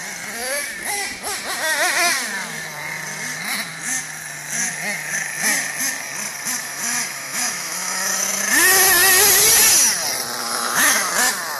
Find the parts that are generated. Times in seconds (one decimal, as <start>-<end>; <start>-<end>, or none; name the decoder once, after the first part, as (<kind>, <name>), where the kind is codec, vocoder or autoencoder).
6.6-8.4 (autoencoder, DAC-VAE); 10.4-11.1